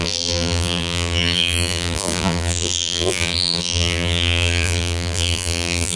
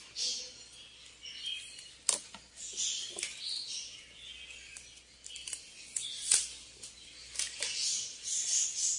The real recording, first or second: second